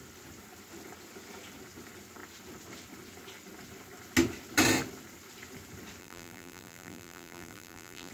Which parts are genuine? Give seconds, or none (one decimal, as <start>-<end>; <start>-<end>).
0.0-6.0